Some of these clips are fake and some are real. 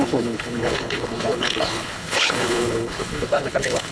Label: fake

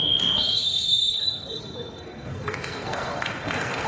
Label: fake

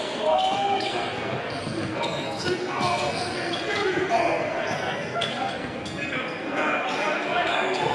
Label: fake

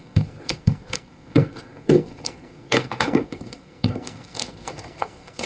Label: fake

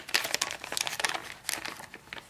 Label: real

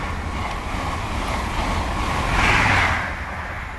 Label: real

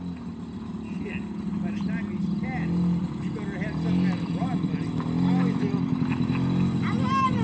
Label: real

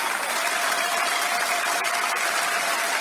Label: real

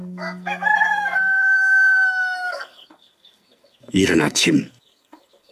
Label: fake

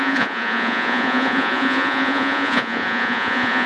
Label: fake